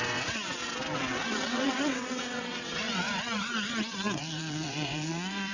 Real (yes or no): no